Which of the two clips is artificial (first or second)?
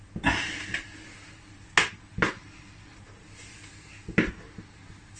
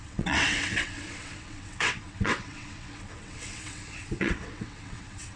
second